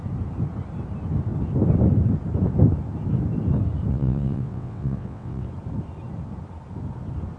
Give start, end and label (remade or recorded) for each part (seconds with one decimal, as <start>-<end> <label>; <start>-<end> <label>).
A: 0.0-3.9 recorded; 3.9-5.5 remade; 5.5-7.4 recorded